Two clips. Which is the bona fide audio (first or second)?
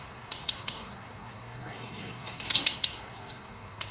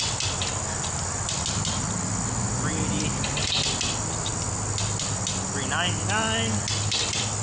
second